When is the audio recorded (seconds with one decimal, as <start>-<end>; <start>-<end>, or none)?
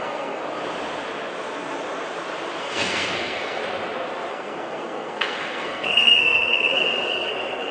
0.4-2.6; 3.6-4.3